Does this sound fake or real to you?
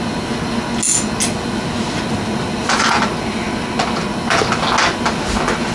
real